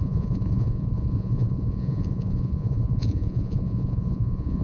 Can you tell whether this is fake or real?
fake